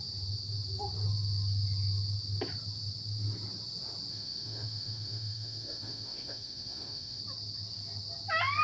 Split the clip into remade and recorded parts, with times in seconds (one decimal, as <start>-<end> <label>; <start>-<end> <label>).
0.0-4.1 recorded; 4.1-7.2 remade; 7.2-8.6 recorded